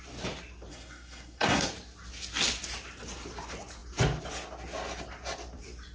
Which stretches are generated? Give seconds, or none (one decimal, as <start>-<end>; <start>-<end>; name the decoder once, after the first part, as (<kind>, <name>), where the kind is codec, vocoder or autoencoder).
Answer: 0.7-1.7 (codec, SNAC)